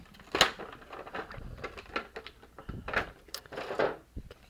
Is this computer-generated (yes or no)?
no